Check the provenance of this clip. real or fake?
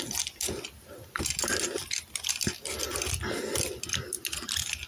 real